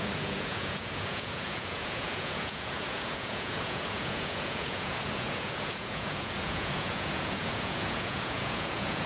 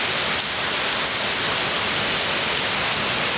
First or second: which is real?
second